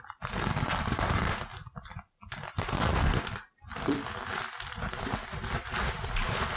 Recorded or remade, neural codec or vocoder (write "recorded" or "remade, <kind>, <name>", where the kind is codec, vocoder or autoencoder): remade, vocoder, BigVGAN v2